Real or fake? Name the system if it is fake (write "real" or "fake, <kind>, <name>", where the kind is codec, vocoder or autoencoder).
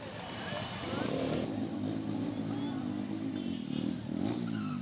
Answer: real